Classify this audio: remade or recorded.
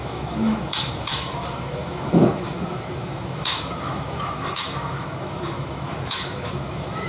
remade